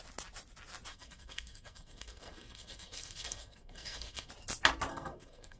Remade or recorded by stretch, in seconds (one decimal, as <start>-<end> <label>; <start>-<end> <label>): 0.0-0.9 recorded; 0.9-4.3 remade; 4.3-4.9 recorded; 4.9-5.6 remade